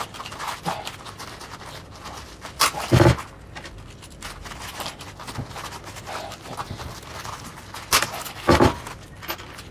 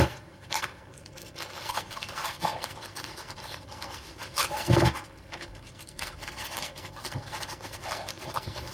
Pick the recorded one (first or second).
first